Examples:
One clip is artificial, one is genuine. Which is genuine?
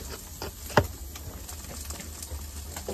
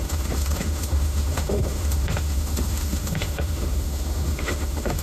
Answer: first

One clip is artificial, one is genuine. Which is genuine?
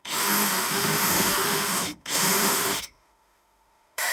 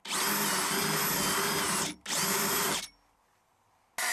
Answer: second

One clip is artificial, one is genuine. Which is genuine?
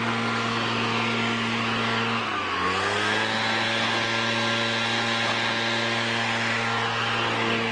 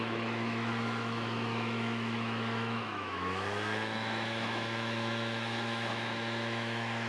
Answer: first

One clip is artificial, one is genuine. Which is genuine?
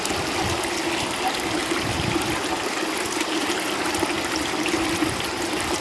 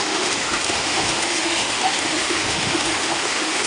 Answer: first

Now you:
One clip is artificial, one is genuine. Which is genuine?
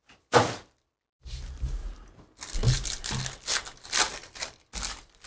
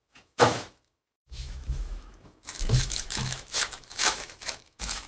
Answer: first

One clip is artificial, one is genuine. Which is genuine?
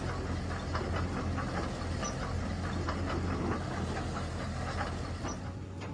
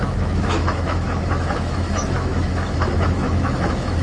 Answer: first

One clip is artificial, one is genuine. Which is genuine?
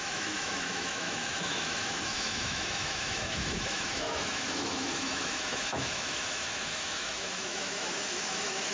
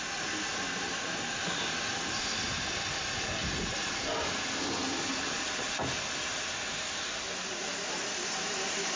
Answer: second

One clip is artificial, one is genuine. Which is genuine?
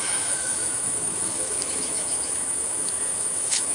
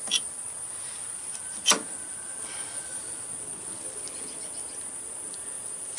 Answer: second